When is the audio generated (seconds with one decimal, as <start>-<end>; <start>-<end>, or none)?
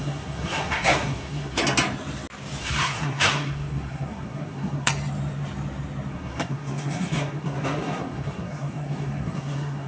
0.0-1.6; 2.6-4.9; 6.1-9.9